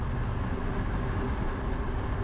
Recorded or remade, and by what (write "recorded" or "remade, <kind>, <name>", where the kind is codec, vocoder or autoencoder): recorded